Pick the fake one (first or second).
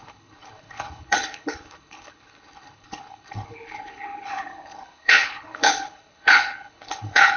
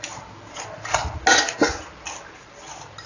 first